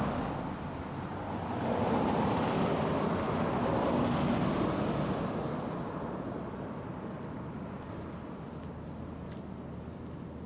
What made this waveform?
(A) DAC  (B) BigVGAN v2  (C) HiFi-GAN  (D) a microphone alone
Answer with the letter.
D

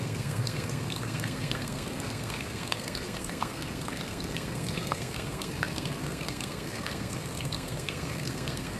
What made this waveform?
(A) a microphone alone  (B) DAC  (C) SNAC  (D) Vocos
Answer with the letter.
C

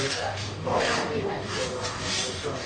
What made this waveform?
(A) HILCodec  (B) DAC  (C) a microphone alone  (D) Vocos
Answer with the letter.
B